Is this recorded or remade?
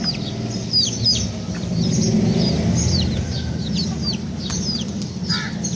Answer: recorded